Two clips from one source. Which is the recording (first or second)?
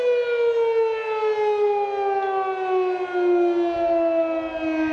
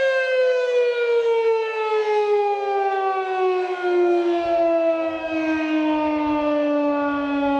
first